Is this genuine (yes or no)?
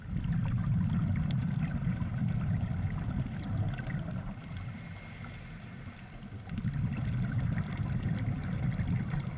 yes